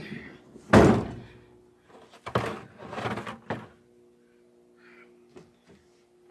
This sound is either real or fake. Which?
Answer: real